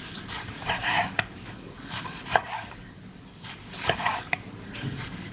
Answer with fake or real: fake